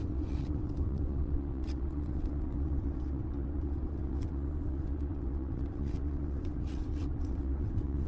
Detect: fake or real fake